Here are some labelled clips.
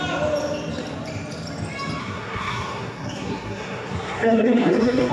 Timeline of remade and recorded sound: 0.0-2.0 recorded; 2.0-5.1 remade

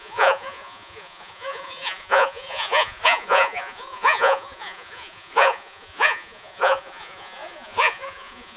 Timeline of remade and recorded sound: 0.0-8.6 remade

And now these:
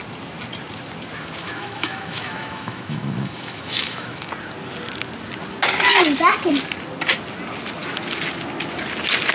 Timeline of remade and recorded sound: 0.0-1.4 recorded; 1.4-4.3 remade; 4.3-9.3 recorded

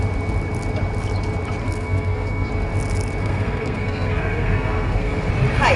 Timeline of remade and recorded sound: 0.0-1.6 recorded; 1.6-2.5 remade; 2.5-3.2 recorded; 3.2-5.3 remade; 5.3-5.8 recorded

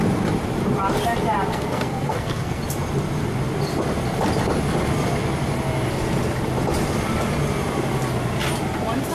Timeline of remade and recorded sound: 0.0-1.5 recorded; 1.5-2.6 remade; 2.6-9.1 recorded

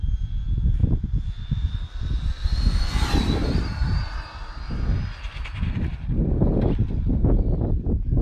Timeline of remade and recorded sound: 0.0-0.8 recorded; 0.8-5.7 remade; 5.7-8.2 recorded

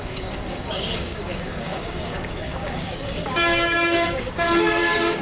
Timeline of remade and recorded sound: 0.0-5.2 remade

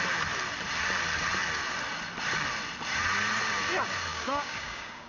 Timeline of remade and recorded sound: 0.0-4.1 recorded; 4.1-5.1 remade